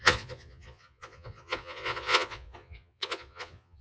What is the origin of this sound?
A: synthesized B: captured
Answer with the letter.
A